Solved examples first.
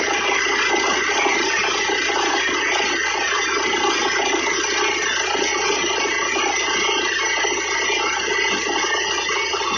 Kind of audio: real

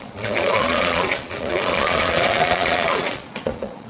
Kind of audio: fake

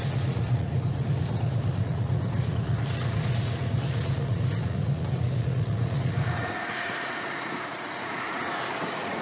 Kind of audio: fake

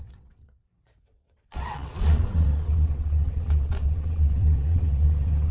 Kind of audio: fake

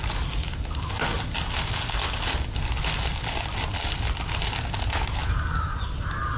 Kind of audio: real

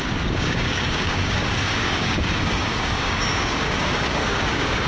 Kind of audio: fake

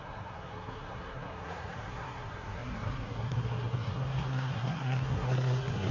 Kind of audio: fake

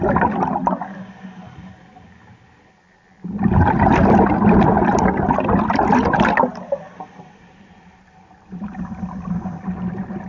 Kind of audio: real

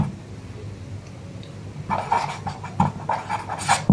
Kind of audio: real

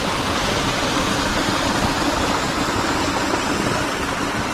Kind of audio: real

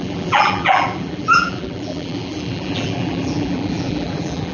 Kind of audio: fake